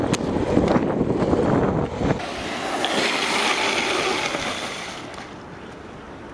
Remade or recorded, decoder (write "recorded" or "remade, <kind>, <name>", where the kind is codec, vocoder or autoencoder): recorded